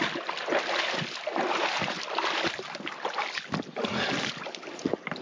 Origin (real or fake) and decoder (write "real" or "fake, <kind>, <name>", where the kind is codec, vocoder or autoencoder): real